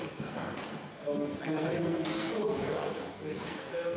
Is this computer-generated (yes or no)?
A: yes